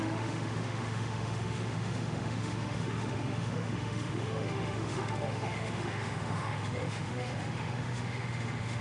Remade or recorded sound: remade